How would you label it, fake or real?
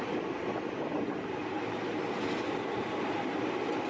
real